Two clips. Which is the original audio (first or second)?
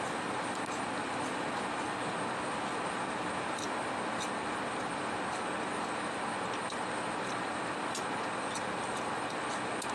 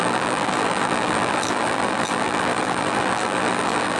first